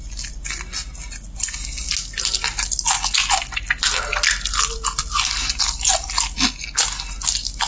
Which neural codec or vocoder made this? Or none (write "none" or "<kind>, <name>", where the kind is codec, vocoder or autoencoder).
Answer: none